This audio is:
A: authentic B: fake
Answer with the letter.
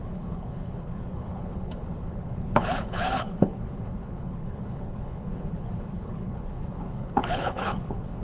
B